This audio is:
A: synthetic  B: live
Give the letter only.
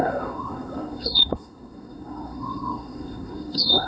A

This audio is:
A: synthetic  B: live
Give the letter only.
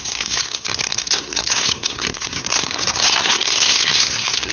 A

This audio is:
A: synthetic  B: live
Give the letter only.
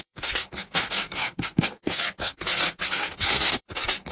A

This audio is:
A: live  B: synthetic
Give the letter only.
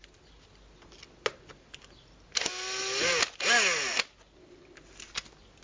A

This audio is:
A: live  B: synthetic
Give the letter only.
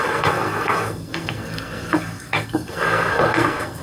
B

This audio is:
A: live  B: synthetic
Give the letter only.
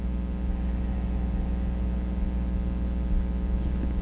A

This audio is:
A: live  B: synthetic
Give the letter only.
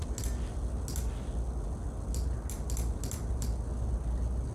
A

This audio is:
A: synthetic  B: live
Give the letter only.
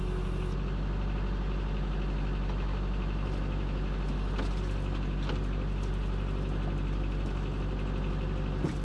B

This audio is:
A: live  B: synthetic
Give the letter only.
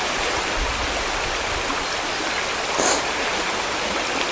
A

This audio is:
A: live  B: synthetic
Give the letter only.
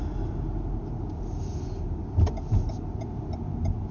A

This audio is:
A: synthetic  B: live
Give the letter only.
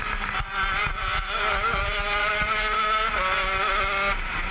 B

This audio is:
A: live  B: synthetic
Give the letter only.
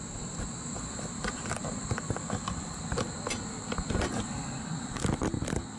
A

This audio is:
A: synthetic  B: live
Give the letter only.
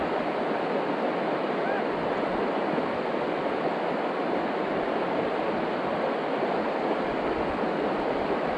B